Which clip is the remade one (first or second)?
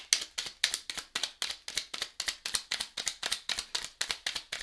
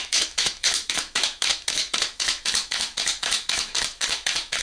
second